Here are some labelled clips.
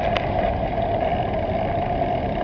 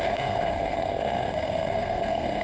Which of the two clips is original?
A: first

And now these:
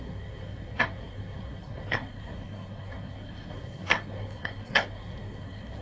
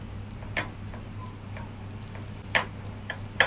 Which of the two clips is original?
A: second